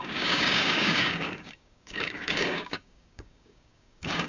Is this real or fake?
fake